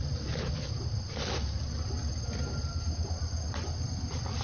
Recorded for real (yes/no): yes